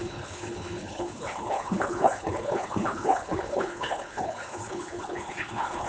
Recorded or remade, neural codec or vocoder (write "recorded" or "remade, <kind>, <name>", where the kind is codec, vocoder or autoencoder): remade, codec, HILCodec